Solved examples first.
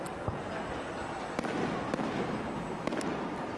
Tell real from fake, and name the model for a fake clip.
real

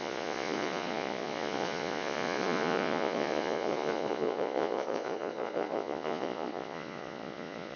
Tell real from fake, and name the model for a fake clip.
fake, vocoder, Vocos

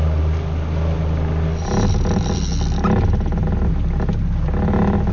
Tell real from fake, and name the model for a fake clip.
real